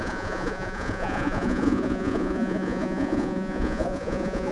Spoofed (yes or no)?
yes